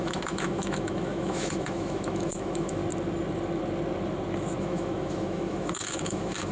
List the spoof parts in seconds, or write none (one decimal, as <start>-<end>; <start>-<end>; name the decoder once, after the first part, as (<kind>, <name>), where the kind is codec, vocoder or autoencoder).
0.0-2.8 (autoencoder, DAC-VAE); 4.6-6.5